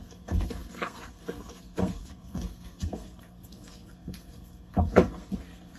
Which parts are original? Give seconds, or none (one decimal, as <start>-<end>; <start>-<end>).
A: none